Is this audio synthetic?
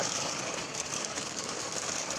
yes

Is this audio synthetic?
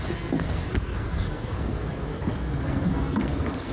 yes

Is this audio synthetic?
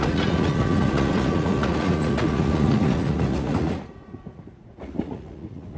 yes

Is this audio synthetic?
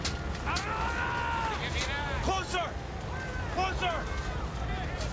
no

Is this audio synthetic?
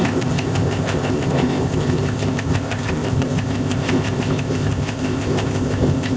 yes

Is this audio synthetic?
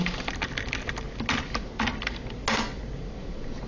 no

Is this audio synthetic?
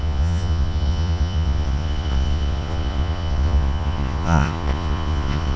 yes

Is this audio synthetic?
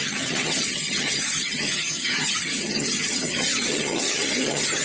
yes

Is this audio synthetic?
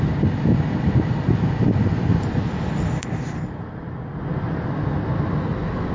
no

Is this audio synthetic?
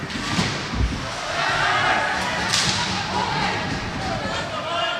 no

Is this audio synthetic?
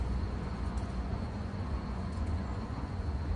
yes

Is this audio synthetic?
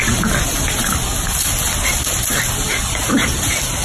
no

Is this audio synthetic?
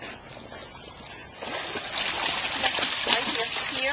no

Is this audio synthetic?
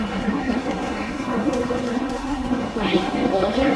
yes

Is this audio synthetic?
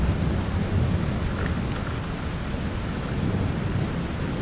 no